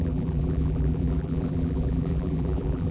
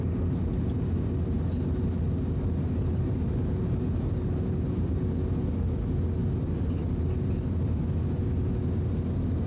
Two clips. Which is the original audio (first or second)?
second